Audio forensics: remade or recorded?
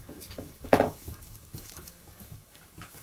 remade